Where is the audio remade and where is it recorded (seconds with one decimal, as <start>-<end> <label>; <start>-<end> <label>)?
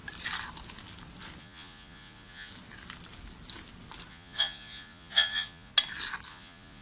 0.0-1.4 recorded; 1.4-2.5 remade; 2.5-4.1 recorded; 4.1-5.7 remade; 5.7-6.3 recorded; 6.3-6.8 remade